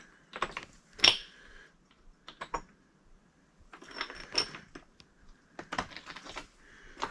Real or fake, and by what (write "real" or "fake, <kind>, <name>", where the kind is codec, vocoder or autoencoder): real